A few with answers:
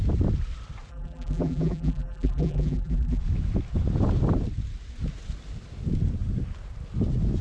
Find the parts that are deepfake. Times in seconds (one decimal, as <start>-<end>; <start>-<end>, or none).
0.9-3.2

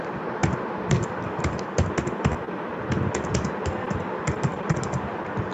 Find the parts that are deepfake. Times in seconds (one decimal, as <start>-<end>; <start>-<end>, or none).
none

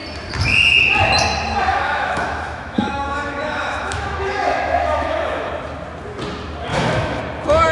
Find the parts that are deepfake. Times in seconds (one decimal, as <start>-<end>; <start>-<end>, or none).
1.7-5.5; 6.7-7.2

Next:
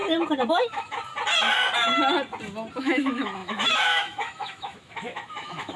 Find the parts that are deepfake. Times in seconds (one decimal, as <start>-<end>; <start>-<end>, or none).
0.5-1.1; 2.8-5.8

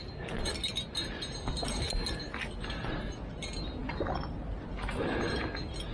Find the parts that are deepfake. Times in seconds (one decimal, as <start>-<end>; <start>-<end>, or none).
none

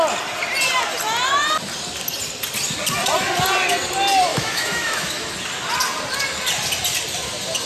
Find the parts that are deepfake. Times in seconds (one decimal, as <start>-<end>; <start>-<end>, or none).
4.3-5.3

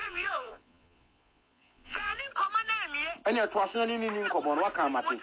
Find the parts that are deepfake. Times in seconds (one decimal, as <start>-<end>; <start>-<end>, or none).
0.0-2.2